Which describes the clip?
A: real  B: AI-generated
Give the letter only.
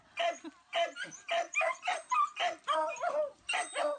B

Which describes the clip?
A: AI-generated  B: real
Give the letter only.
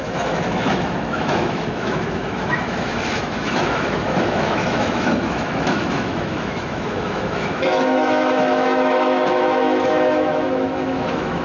A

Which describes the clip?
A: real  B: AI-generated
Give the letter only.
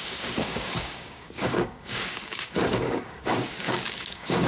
B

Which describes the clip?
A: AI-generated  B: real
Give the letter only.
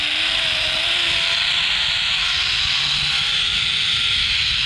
B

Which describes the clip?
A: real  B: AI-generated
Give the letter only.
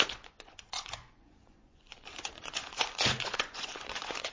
B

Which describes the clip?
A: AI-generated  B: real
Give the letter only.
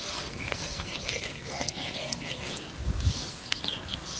A